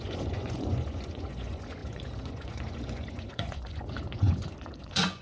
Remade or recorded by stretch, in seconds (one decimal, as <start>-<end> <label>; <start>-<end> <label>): 0.0-5.2 remade